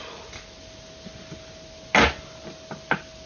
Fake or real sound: real